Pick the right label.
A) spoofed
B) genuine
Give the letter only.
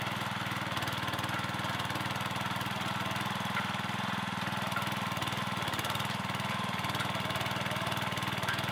B